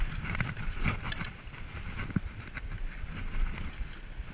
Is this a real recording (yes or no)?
yes